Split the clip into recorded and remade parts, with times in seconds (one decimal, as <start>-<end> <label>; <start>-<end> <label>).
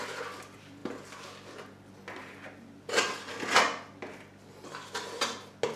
0.0-5.8 recorded